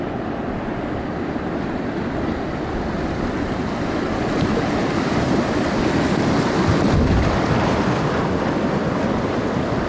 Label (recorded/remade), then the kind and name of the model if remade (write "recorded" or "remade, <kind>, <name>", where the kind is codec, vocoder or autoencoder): remade, vocoder, BigVGAN v2